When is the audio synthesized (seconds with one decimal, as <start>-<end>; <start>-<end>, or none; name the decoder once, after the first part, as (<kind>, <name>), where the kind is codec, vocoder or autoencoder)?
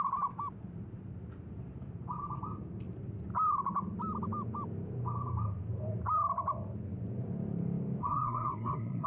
8.0-9.1 (codec, SNAC)